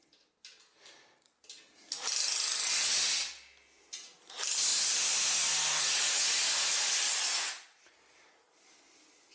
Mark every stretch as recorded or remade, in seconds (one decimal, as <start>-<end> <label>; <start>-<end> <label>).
0.0-9.3 recorded